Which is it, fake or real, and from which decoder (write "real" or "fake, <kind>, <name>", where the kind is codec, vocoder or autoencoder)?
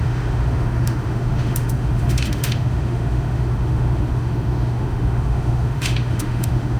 fake, autoencoder, DAC-VAE